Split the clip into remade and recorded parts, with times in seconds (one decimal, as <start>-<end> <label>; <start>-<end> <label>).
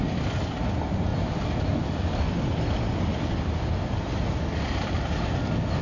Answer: 0.0-5.8 recorded